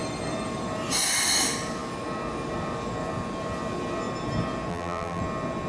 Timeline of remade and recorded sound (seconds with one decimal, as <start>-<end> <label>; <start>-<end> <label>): 0.0-4.7 recorded; 4.7-5.2 remade; 5.2-5.7 recorded